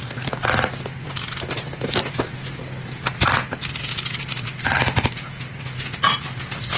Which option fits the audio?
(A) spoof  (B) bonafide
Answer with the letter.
B